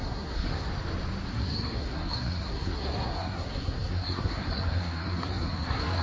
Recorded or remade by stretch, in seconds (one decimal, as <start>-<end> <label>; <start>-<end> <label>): 0.0-0.7 remade; 0.7-1.3 recorded; 1.3-6.0 remade